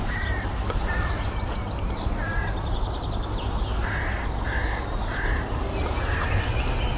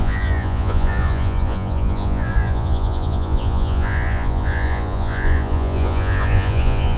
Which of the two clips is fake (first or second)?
second